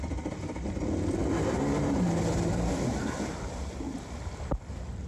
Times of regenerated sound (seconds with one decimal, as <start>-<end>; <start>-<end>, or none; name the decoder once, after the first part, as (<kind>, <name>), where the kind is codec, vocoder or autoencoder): none